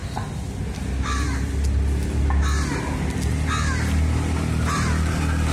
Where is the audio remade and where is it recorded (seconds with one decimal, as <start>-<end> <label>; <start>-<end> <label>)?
0.0-5.5 recorded